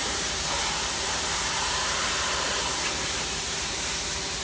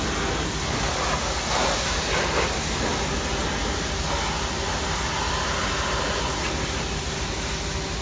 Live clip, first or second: second